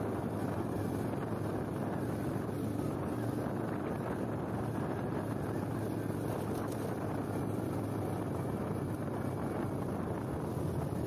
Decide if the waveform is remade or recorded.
recorded